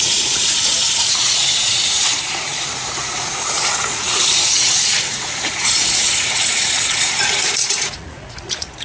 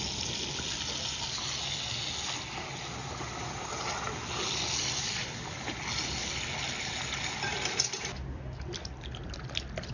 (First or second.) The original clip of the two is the second